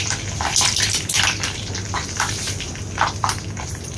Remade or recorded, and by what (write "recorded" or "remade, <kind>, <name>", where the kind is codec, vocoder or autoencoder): remade, vocoder, BigVGAN v2